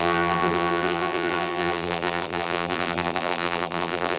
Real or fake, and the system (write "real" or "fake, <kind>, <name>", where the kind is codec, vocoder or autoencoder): fake, vocoder, BigVGAN v2